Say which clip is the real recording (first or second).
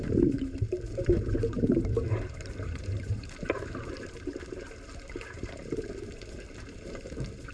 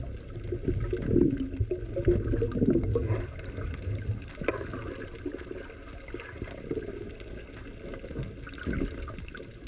second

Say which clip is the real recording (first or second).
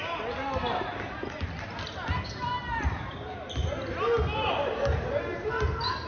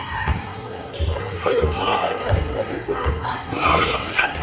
first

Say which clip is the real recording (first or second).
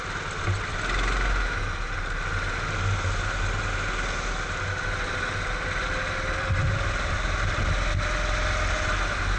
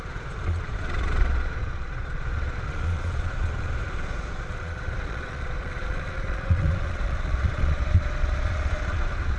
first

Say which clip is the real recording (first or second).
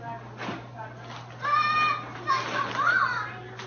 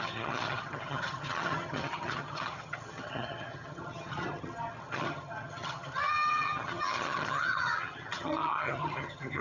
first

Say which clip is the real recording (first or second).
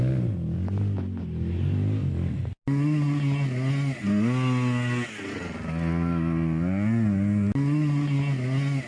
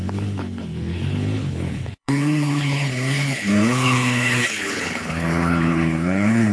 first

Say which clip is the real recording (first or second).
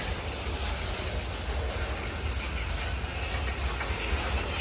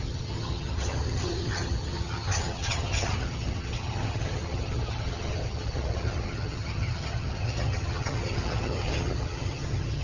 first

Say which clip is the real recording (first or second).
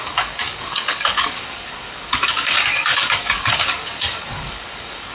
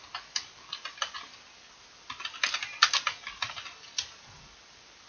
second